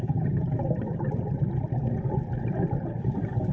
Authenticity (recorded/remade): recorded